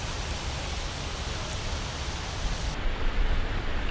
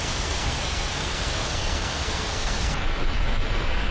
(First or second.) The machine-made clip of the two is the second